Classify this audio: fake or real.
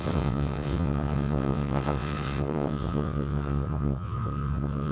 fake